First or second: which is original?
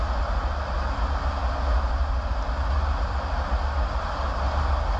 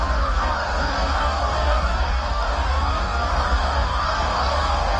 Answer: first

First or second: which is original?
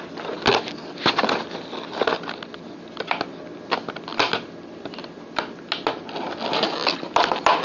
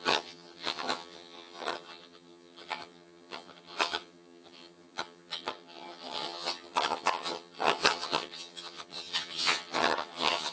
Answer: first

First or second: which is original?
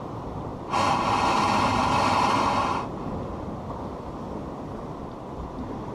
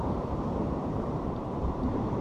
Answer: first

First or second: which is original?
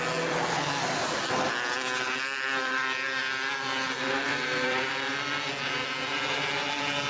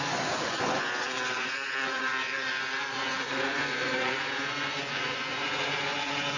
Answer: first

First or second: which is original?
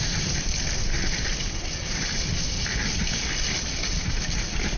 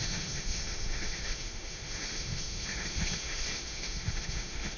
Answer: first